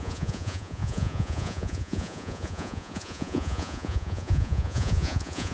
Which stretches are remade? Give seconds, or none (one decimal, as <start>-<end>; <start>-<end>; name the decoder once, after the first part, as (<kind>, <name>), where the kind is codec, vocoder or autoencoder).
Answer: 0.0-5.5 (vocoder, Vocos)